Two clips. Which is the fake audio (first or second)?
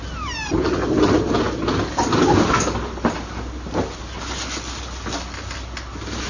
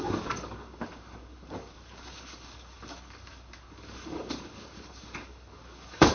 second